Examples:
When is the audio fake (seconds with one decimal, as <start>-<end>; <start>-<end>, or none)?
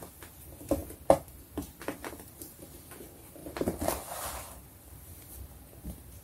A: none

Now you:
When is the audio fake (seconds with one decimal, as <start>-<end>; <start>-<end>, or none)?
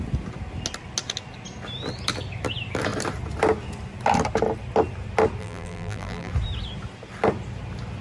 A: 5.4-6.3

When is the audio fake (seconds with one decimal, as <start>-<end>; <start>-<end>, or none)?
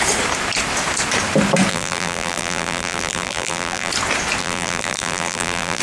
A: 1.7-3.9; 4.4-5.8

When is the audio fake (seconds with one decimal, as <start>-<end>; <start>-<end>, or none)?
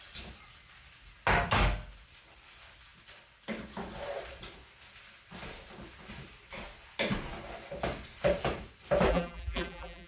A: 9.1-10.1